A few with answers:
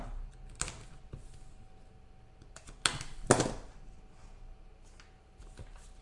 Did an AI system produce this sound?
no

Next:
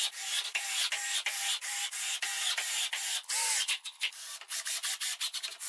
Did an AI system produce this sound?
no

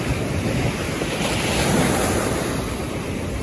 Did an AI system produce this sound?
no